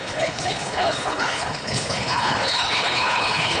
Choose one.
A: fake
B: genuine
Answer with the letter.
A